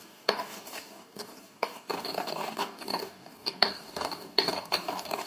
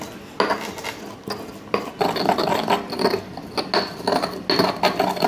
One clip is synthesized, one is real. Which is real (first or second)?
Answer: second